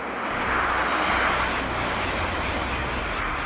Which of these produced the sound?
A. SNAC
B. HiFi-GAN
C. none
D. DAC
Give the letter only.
C